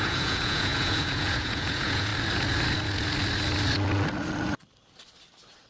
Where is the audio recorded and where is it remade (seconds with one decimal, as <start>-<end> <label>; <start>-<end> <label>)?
0.0-2.1 remade; 2.1-5.7 recorded